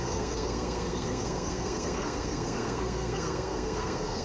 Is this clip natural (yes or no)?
no